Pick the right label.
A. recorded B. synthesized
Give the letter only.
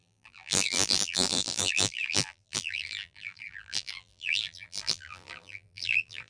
B